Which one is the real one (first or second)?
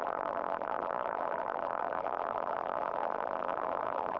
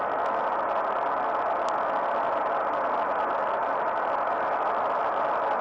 second